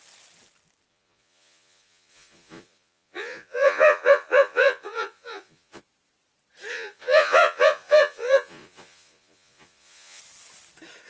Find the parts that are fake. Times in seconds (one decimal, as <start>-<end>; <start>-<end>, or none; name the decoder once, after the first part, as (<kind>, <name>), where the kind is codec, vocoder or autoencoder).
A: 0.9-5.8 (vocoder, Vocos); 6.7-10.2